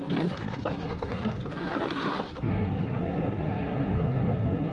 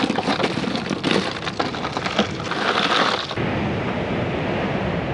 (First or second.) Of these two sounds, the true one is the second